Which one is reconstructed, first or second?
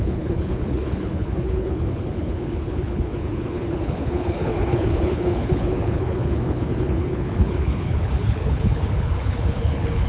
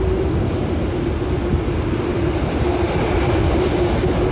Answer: first